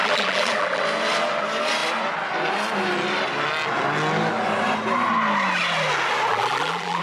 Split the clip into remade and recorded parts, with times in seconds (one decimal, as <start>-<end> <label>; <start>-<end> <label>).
0.0-0.8 remade; 0.8-6.3 recorded; 6.3-7.0 remade